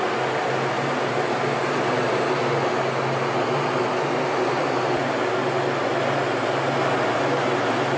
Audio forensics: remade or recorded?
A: recorded